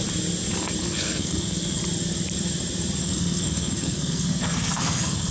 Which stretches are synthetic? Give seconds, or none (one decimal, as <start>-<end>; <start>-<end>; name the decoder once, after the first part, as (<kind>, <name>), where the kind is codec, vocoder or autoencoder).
0.8-1.8 (codec, SNAC); 3.0-5.3